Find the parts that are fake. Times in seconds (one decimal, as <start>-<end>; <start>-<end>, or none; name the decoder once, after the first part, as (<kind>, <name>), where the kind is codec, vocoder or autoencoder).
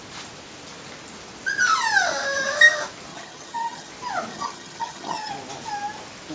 3.1-3.9 (vocoder, HiFi-GAN); 4.3-5.3